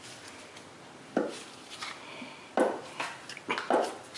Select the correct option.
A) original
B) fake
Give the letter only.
A